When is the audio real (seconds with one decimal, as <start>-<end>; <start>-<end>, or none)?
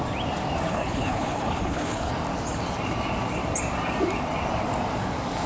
0.0-0.7; 2.1-5.5